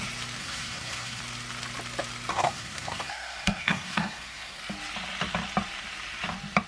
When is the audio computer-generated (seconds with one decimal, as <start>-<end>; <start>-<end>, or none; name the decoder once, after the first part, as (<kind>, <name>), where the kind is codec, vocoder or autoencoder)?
0.4-1.2 (codec, SNAC); 2.3-4.6